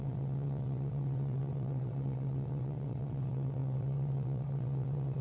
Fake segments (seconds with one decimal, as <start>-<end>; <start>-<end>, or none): 0.0-5.2